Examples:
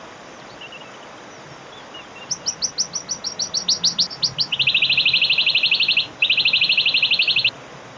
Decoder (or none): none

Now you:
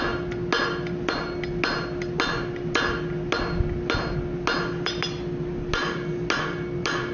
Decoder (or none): none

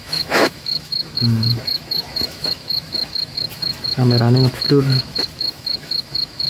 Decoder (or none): autoencoder, DAC-VAE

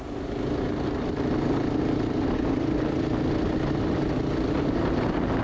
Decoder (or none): none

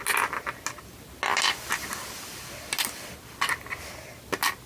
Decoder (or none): none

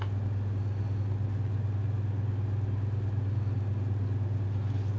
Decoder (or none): none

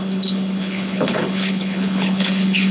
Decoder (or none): codec, HILCodec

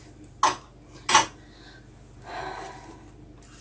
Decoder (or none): none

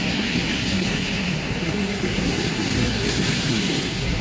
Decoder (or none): codec, SNAC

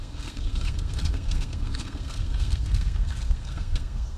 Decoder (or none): codec, SNAC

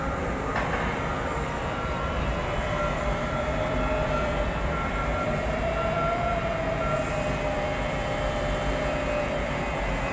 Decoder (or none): vocoder, BigVGAN v2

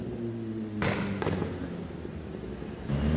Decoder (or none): none